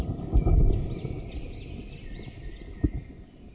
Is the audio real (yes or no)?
yes